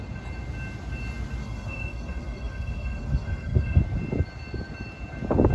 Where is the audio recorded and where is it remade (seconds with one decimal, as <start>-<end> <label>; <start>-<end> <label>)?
0.0-1.4 recorded; 1.4-3.8 remade; 3.8-5.5 recorded